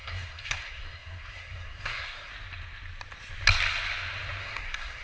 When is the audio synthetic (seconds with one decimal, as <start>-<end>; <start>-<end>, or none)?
0.0-2.3; 4.4-5.0